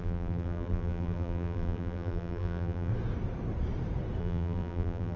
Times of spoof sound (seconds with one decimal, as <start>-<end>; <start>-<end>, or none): 0.0-2.9; 4.2-5.2